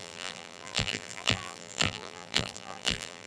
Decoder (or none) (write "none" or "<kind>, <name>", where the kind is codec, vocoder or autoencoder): vocoder, BigVGAN v2